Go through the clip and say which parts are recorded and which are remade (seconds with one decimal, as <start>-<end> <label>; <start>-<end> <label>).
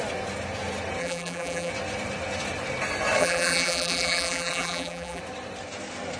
0.0-1.0 recorded; 1.0-1.7 remade; 1.7-3.2 recorded; 3.2-5.2 remade; 5.2-6.2 recorded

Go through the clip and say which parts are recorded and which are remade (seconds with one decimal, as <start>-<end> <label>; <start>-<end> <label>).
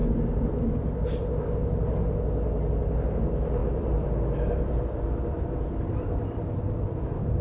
0.0-0.6 remade; 0.6-3.6 recorded; 3.6-7.4 remade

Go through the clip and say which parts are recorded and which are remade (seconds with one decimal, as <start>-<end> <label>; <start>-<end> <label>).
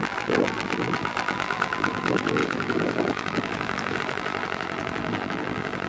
0.0-5.9 remade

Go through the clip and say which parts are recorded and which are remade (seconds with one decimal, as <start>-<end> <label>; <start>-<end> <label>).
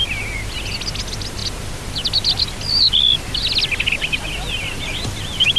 0.0-5.6 recorded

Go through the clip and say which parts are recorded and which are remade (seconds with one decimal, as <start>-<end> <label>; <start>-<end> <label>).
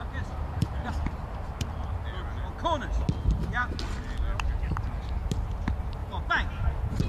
0.0-1.5 remade; 1.5-6.0 recorded; 6.0-7.1 remade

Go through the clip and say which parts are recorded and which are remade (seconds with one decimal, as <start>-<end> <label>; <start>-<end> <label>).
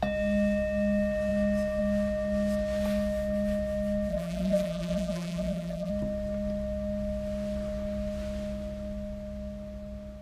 0.0-4.1 recorded; 4.1-5.9 remade; 5.9-10.2 recorded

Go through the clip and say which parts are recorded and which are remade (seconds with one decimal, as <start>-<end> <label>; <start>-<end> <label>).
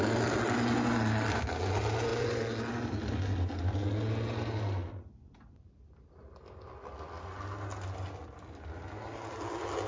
0.0-9.9 recorded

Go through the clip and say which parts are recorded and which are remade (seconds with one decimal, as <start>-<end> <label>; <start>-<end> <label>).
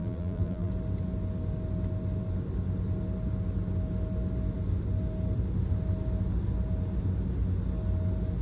0.0-0.7 remade; 0.7-8.4 recorded